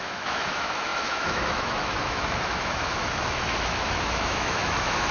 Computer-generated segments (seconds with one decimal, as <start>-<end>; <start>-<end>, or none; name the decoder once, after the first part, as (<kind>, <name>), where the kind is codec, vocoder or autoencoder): 0.0-5.1 (autoencoder, DAC-VAE)